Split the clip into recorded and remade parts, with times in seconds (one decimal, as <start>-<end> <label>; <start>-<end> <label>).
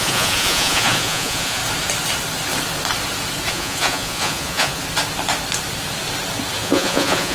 0.0-1.6 remade; 1.6-3.5 recorded; 3.5-4.8 remade; 4.8-6.6 recorded; 6.6-7.3 remade